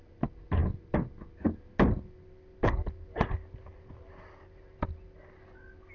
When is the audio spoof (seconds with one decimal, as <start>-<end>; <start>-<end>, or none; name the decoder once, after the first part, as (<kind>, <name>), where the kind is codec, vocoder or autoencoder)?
none